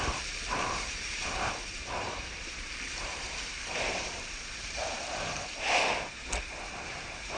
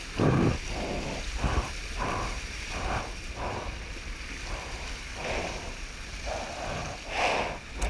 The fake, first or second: first